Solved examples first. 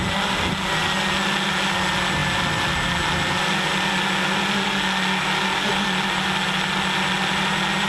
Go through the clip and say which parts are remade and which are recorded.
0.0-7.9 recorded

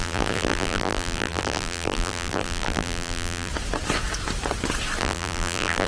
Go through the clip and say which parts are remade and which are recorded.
0.0-3.5 remade; 3.5-5.0 recorded; 5.0-5.9 remade

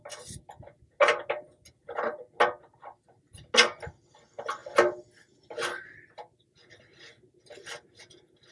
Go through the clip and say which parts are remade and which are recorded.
0.0-8.5 recorded

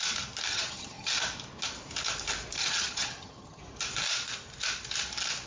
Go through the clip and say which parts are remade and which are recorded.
0.0-0.5 recorded; 0.5-1.1 remade; 1.1-2.6 recorded; 2.6-3.6 remade; 3.6-5.5 recorded

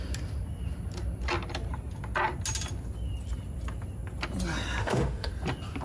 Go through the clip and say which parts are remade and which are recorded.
0.0-4.8 recorded; 4.8-5.3 remade; 5.3-5.8 recorded

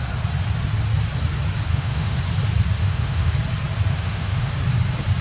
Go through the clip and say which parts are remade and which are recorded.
0.0-1.7 recorded; 1.7-2.2 remade; 2.2-2.8 recorded; 2.8-3.3 remade; 3.3-3.9 recorded; 3.9-4.5 remade; 4.5-5.2 recorded

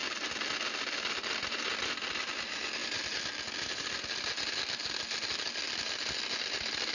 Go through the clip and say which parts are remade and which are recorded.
0.0-6.9 recorded